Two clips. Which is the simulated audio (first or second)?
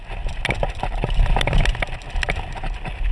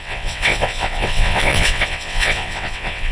second